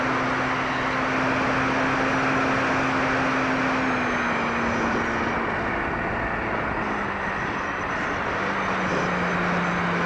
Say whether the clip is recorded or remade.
recorded